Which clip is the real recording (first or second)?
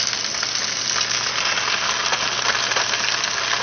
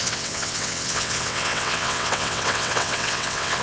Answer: first